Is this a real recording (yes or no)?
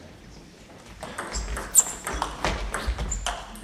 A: yes